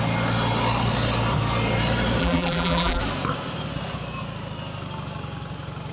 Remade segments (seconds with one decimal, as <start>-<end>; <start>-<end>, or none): 2.2-3.0